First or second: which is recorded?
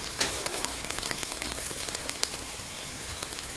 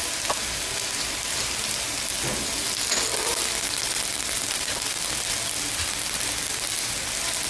second